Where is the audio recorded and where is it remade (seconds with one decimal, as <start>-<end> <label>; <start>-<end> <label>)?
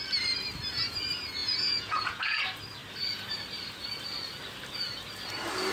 0.0-1.4 recorded; 1.4-2.4 remade; 2.4-5.7 recorded